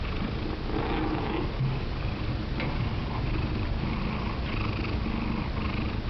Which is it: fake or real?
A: real